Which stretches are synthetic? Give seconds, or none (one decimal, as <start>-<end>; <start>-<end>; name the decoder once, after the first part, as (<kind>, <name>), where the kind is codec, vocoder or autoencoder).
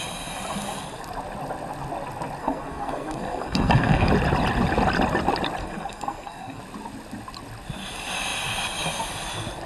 2.4-4.1 (codec, SNAC); 5.6-6.6